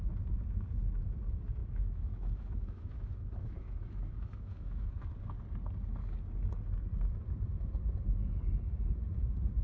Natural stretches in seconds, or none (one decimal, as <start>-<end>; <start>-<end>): 0.0-1.6; 4.9-9.6

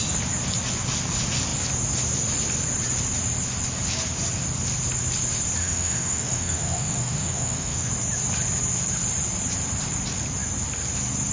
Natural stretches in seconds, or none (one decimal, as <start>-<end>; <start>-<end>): 0.0-5.6; 7.9-11.3

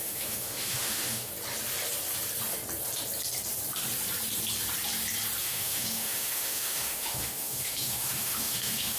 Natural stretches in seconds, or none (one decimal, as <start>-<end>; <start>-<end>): 1.3-5.4

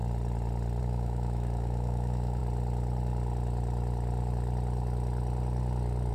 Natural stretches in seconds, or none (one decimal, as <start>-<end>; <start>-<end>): 0.0-0.8; 2.4-6.1

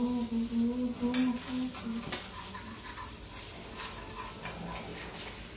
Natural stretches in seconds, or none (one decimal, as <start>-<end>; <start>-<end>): 0.0-5.6

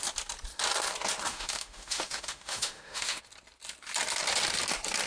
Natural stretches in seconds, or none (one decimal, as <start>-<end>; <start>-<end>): 0.0-1.3; 3.2-5.1

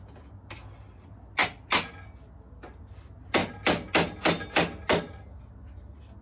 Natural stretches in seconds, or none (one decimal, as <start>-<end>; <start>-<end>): 0.0-6.2